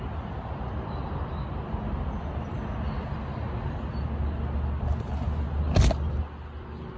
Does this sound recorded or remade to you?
recorded